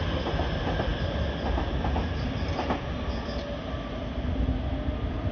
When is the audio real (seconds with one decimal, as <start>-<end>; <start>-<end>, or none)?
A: 0.0-5.3

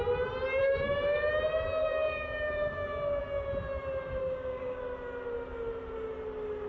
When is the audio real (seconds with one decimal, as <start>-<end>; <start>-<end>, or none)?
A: 0.0-0.6; 1.3-1.8; 3.2-4.2; 4.8-6.7